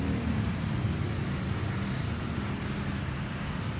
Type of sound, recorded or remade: recorded